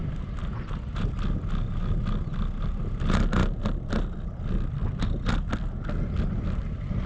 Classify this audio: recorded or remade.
recorded